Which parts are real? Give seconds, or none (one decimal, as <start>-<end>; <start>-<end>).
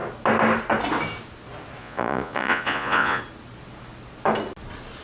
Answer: 0.0-1.8; 3.2-5.0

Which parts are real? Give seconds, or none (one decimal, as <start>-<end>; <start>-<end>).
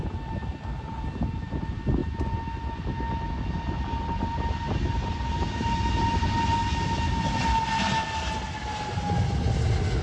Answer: 0.0-10.0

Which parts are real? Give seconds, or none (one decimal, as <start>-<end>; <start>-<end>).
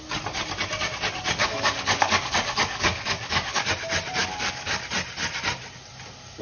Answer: 0.0-1.4; 3.7-4.2; 4.8-6.4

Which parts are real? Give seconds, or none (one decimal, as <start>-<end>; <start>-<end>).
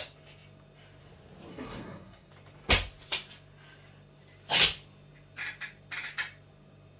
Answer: 0.0-1.5; 2.3-7.0